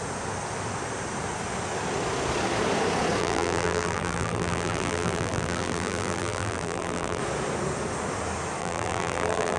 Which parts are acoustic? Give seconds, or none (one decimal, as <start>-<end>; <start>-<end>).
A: 0.0-3.2; 7.2-8.6